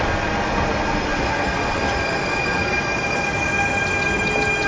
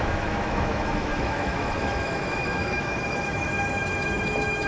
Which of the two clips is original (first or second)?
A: first